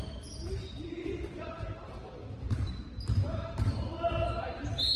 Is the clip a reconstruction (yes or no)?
yes